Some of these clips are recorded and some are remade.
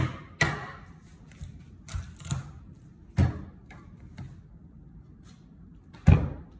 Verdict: recorded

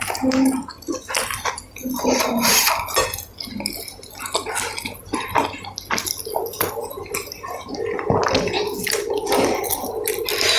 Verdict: recorded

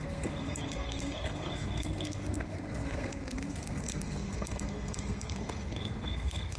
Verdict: remade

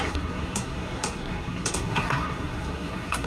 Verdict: remade